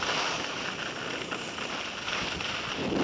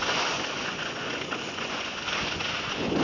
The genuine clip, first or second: first